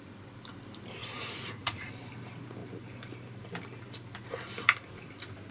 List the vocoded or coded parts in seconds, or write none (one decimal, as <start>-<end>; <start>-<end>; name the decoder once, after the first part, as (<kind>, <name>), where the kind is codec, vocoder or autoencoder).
1.0-1.9 (vocoder, Vocos)